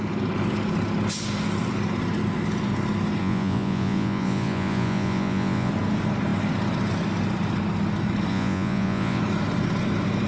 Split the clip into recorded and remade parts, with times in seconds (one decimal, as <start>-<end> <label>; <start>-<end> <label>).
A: 0.0-3.2 recorded; 3.2-5.7 remade; 5.7-8.3 recorded; 8.3-9.2 remade; 9.2-10.3 recorded

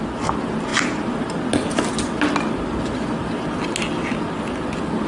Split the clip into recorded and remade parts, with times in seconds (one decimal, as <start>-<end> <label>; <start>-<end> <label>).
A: 0.0-5.1 recorded

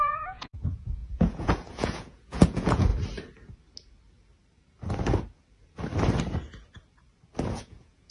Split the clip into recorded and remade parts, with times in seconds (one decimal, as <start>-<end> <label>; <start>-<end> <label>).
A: 0.0-2.9 remade; 2.9-7.5 recorded; 7.5-8.1 remade

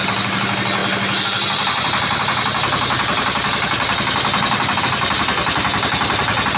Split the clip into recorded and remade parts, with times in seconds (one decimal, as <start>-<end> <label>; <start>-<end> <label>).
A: 0.0-6.6 recorded

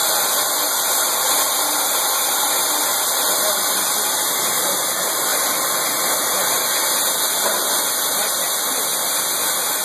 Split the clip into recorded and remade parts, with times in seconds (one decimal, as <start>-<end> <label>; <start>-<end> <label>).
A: 0.0-9.8 recorded

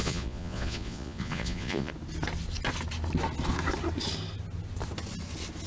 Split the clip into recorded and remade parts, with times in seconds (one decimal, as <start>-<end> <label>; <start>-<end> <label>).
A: 0.0-1.9 remade; 1.9-5.7 recorded

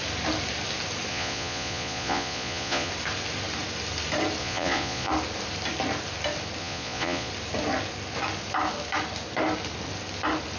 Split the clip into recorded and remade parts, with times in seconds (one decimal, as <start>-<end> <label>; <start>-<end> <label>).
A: 0.0-1.1 recorded; 1.1-2.9 remade; 2.9-4.4 recorded; 4.4-5.1 remade; 5.1-6.6 recorded; 6.6-7.3 remade; 7.3-10.6 recorded

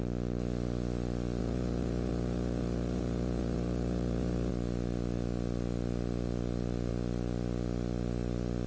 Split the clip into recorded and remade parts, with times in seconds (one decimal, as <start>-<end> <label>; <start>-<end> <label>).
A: 0.0-1.4 recorded; 1.4-4.5 remade; 4.5-8.7 recorded